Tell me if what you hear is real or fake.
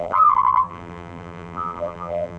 fake